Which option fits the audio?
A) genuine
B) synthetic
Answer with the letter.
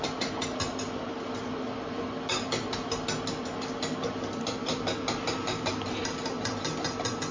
A